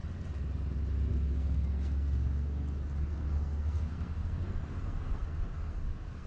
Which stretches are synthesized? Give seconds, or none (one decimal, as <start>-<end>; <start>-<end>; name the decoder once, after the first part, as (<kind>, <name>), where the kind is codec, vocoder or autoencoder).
1.1-6.3 (codec, SNAC)